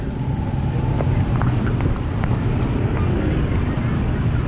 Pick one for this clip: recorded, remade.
recorded